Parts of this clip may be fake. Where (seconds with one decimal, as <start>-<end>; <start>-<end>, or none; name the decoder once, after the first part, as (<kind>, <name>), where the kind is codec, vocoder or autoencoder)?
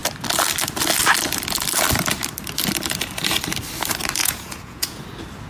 4.2-5.0 (vocoder, Vocos)